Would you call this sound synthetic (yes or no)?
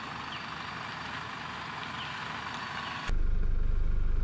no